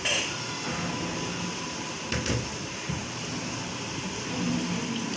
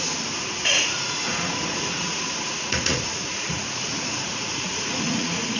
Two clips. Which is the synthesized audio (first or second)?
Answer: second